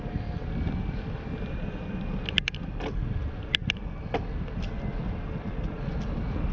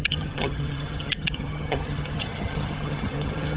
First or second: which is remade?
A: second